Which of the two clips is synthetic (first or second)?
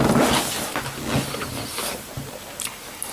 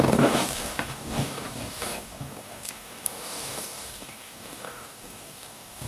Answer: second